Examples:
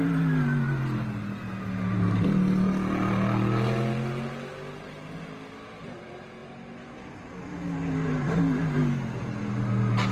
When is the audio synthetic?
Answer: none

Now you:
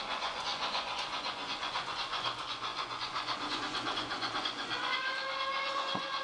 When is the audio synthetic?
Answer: 0.0-6.2